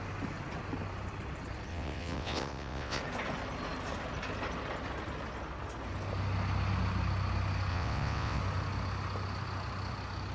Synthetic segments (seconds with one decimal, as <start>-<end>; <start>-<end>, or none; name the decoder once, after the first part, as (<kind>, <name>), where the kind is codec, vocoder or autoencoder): 1.7-3.0 (vocoder, WaveNeXt); 7.7-8.4